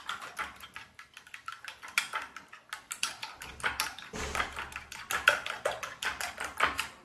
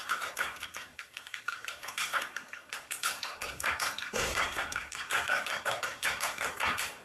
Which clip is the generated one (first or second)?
second